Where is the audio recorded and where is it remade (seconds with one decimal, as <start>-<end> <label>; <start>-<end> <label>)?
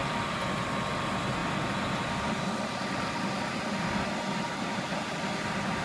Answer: 0.0-5.8 recorded